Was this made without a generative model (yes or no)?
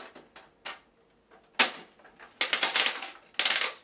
yes